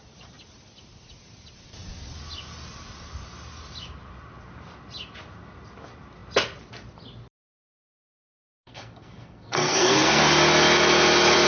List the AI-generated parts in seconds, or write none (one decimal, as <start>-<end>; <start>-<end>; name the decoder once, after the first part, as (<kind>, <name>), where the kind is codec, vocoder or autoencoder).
8.6-10.2 (codec, SNAC)